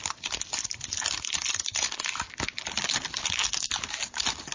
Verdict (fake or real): real